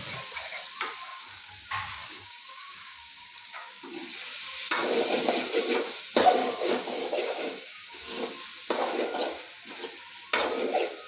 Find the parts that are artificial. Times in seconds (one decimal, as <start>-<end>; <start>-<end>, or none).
1.1-3.8; 6.4-8.2